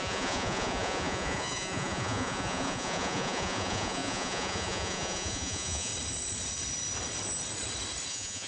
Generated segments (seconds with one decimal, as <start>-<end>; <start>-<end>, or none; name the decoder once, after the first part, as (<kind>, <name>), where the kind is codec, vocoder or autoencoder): 0.0-5.9 (vocoder, Vocos); 8.1-8.5